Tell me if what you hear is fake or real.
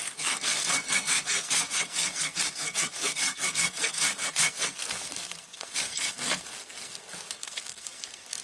fake